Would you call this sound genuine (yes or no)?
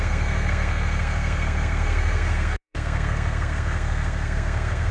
no